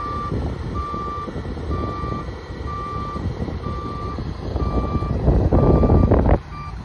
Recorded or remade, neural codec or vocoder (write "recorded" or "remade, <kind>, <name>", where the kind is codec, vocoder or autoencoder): recorded